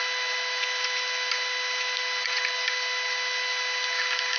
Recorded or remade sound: recorded